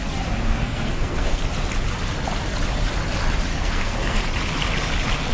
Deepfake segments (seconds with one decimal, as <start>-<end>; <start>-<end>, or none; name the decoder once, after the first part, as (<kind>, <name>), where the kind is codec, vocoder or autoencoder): 0.5-1.4 (codec, SNAC); 3.5-4.2